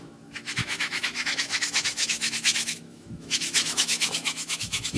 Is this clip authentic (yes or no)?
no